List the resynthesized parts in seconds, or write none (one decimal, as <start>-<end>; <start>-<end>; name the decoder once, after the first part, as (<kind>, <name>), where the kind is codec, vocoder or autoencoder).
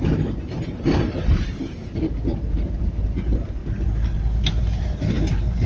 0.0-3.6 (vocoder, BigVGAN v2); 4.4-5.7